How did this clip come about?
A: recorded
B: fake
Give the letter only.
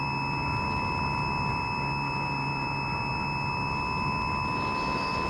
A